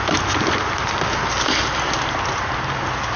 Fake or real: real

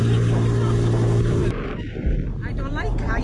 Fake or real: fake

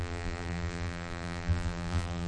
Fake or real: fake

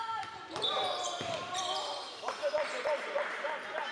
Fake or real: fake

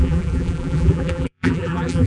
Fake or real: fake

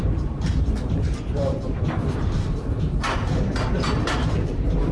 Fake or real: fake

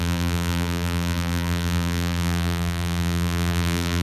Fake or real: fake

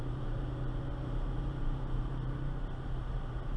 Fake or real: fake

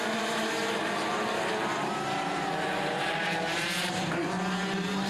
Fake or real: fake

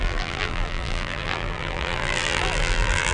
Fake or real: fake